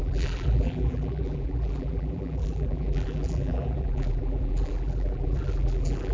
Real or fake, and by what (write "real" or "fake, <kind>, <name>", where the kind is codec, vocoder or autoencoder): fake, vocoder, BigVGAN v2